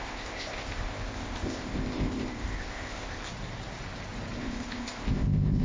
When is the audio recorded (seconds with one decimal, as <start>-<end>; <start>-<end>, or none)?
3.3-4.4